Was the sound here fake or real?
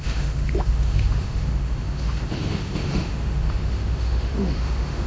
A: fake